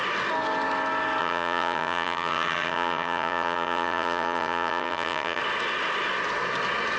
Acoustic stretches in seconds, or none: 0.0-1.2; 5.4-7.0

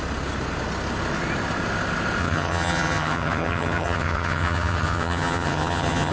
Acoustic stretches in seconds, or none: 0.0-2.2